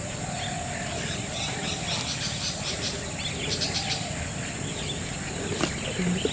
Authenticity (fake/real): real